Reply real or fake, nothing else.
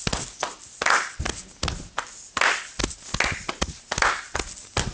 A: real